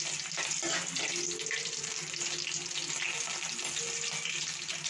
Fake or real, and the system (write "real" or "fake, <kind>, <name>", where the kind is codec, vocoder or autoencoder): real